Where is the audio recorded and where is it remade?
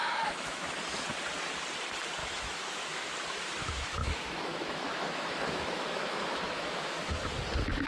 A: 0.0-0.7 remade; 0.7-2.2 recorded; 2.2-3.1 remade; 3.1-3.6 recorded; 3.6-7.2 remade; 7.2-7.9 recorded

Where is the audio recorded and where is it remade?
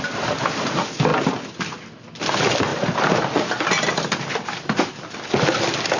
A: 0.0-6.0 recorded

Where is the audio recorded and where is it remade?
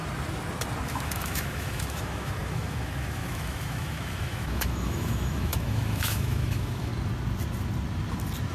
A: 0.0-0.9 recorded; 0.9-6.9 remade; 6.9-8.5 recorded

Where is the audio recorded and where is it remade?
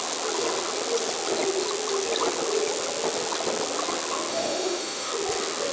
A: 0.0-4.3 recorded; 4.3-5.1 remade; 5.1-5.7 recorded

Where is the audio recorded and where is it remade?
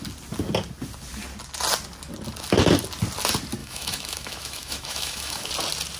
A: 0.0-3.6 recorded; 3.6-5.5 remade; 5.5-6.0 recorded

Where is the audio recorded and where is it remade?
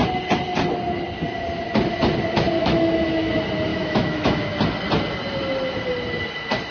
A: 0.0-2.6 recorded; 2.6-3.3 remade; 3.3-3.7 recorded; 3.7-4.4 remade; 4.4-6.7 recorded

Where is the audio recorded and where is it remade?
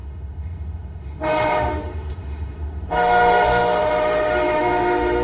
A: 0.0-5.2 remade